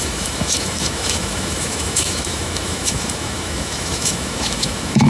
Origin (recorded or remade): remade